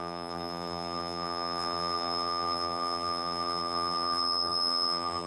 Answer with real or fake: fake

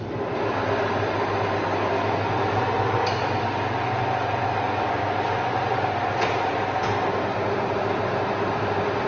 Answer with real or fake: real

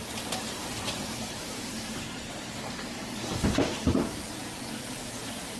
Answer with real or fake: fake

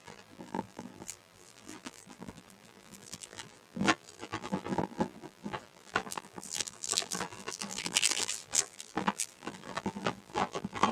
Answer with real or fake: fake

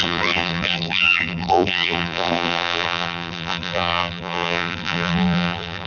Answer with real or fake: fake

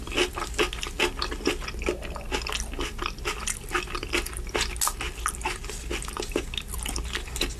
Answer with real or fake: real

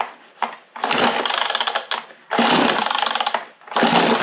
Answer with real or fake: real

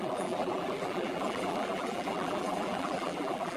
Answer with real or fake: fake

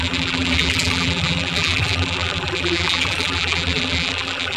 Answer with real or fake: fake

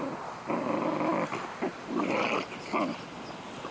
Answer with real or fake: real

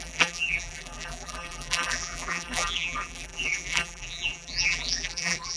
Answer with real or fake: fake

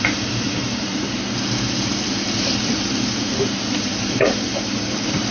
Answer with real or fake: fake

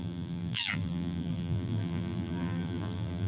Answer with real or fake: fake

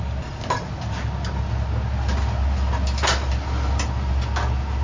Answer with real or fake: real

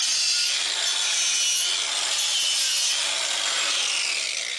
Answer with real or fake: real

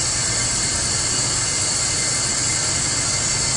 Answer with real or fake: real